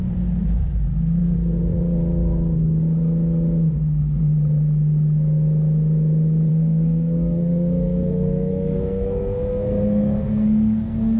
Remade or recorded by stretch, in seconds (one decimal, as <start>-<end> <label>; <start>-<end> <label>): 0.0-6.5 recorded; 6.5-11.2 remade